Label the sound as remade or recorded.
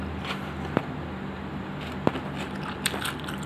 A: remade